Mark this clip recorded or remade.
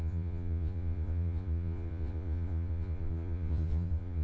remade